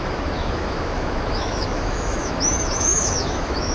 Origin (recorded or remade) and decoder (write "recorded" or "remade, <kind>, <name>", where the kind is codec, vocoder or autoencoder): remade, autoencoder, DAC-VAE